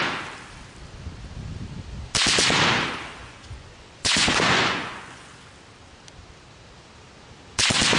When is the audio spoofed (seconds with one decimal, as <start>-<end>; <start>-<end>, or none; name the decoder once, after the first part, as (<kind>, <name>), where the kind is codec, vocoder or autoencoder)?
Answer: 3.2-5.3 (vocoder, Vocos)